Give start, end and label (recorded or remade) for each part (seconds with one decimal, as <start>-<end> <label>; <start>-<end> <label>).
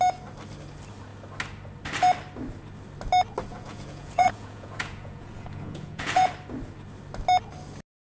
0.0-3.5 recorded; 3.5-6.3 remade; 6.3-8.1 recorded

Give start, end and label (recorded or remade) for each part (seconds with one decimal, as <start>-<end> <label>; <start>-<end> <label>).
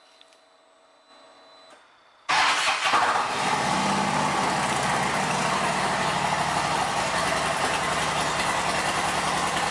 0.0-9.7 recorded